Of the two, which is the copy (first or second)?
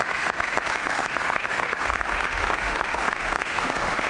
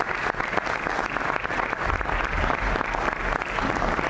first